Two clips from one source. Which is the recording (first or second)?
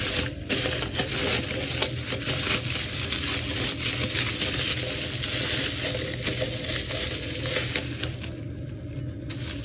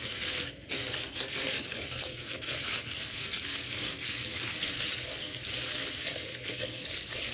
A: first